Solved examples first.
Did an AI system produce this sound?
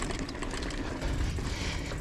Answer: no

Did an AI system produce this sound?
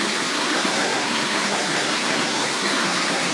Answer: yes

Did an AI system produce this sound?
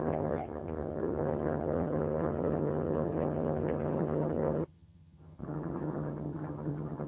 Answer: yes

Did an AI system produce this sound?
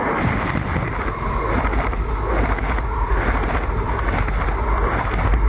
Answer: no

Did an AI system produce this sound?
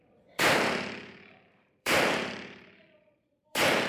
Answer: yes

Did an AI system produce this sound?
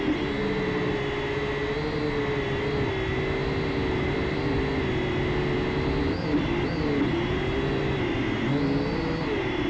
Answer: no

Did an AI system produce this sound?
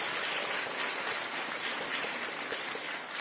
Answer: no